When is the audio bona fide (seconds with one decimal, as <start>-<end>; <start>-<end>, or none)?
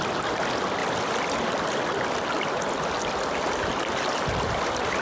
0.0-0.8; 1.8-5.0